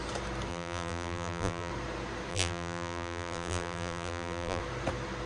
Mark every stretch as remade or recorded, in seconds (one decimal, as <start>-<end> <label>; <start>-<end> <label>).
0.0-0.5 recorded; 0.5-1.7 remade; 1.7-2.3 recorded; 2.3-4.6 remade; 4.6-5.3 recorded